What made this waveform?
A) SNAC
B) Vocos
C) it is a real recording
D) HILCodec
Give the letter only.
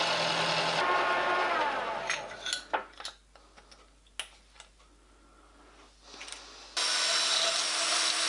C